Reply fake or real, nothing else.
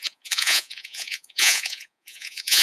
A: fake